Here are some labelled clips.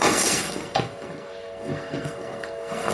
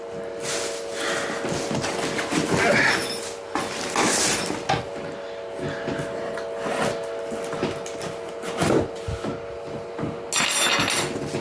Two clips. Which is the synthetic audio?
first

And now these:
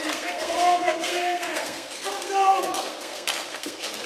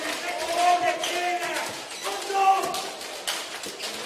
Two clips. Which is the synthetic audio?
first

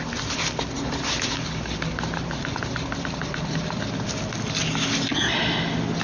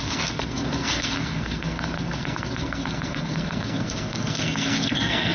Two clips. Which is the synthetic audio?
second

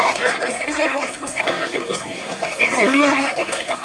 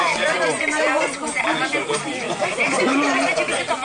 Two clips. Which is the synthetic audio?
first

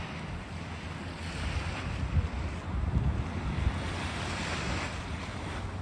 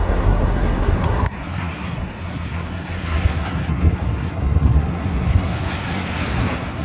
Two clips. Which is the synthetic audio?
second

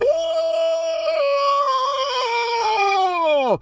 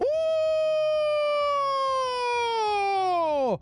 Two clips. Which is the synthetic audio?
first